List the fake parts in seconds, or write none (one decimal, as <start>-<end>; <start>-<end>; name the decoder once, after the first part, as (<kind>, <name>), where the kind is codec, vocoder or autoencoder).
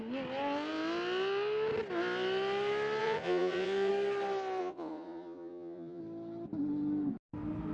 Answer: 3.0-3.9 (vocoder, Vocos); 4.6-6.0